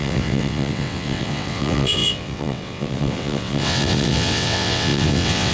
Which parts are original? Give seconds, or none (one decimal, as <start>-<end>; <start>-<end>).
none